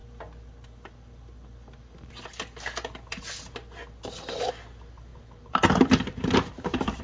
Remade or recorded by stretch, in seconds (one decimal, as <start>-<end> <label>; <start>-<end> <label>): 0.0-5.1 recorded; 5.1-7.0 remade